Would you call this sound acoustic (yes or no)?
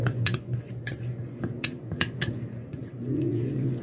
no